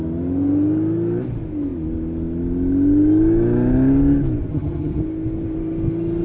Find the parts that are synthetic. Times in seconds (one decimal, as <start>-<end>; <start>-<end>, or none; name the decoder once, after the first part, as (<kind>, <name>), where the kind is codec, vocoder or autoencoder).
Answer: 4.5-5.0 (vocoder, HiFi-GAN)